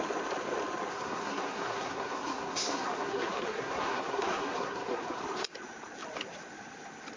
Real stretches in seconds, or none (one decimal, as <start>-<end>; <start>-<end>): 0.0-0.9; 5.2-7.2